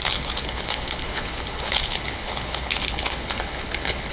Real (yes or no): no